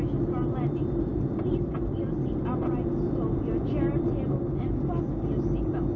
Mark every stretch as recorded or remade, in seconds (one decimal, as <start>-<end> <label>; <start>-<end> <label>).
0.0-6.0 recorded